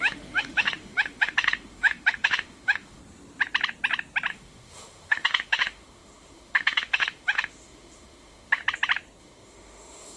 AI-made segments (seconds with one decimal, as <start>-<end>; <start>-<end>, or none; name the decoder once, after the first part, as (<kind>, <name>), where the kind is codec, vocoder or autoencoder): 0.0-3.0 (autoencoder, DAC-VAE); 4.3-8.6; 9.2-10.2